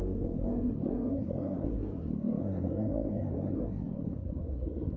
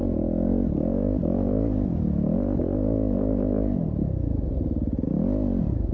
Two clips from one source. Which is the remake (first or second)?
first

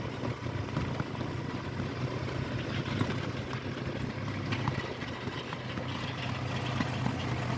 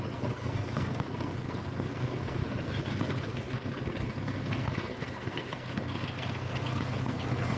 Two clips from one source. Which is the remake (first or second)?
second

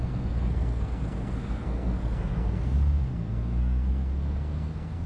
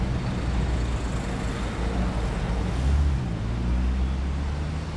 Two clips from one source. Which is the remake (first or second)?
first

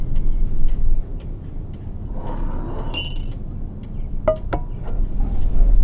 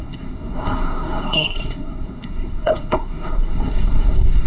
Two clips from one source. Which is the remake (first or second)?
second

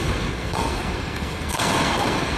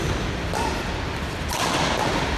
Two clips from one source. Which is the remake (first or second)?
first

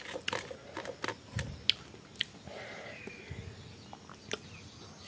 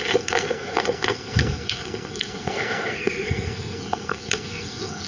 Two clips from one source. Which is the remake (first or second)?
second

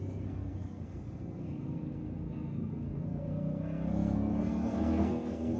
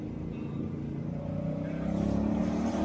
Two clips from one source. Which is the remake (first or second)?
first